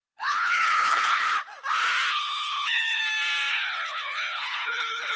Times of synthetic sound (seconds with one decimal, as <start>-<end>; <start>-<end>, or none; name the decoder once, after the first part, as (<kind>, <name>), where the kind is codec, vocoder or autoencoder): 0.0-1.2 (codec, HILCodec); 2.1-3.0; 3.5-5.2